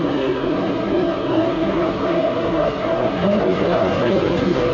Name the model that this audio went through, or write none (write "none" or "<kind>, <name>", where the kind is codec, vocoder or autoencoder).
codec, SNAC